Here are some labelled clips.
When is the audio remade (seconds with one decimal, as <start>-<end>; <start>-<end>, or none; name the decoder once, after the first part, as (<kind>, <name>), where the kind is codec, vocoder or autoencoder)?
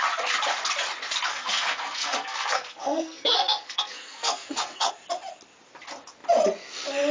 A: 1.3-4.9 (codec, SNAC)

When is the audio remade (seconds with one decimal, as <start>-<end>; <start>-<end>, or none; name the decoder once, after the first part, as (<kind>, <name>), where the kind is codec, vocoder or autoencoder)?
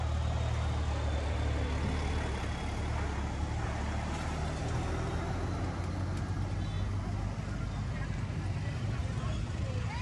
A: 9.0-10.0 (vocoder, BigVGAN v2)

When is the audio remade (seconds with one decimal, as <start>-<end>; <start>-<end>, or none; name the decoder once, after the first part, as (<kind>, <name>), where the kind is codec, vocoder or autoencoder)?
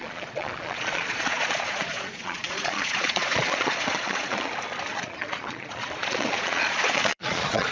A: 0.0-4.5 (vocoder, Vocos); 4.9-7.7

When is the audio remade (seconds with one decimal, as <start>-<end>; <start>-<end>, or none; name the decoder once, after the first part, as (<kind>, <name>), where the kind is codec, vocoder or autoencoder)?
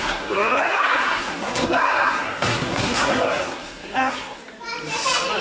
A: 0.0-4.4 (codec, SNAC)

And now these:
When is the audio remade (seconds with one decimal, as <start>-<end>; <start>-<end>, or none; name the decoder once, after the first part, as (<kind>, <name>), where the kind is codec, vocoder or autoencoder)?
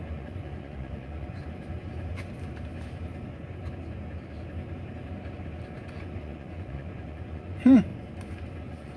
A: 0.0-1.4 (vocoder, Vocos); 5.9-7.9; 8.6-9.0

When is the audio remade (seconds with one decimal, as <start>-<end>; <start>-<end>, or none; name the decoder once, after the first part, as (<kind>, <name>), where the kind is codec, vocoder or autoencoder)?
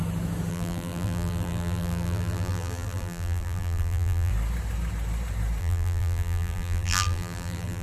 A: 0.5-4.3 (vocoder, BigVGAN v2); 5.6-7.8